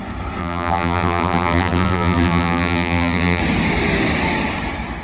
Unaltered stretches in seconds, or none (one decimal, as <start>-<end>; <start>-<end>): 0.0-0.4; 3.4-5.0